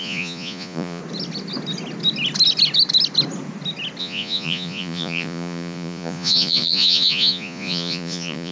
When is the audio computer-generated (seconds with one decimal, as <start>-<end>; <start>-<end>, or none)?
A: 0.0-1.0; 4.0-8.5